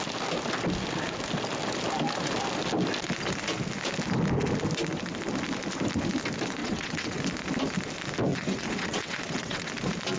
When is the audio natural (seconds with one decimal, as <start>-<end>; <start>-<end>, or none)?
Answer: 0.0-6.6; 7.2-8.3; 9.7-10.2

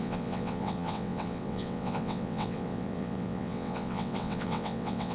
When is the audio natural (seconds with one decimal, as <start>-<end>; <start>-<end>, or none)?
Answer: none

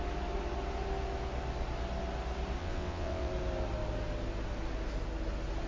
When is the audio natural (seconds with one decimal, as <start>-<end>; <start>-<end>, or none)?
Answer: 0.0-2.6; 3.3-5.7

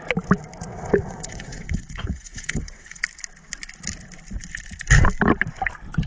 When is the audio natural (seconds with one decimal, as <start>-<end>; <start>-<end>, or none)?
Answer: 0.0-0.7; 3.0-6.1